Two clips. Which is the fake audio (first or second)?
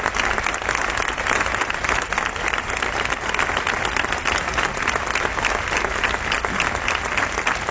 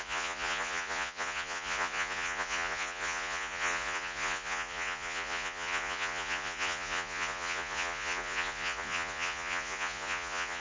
second